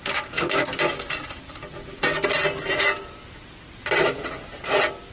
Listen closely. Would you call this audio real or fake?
real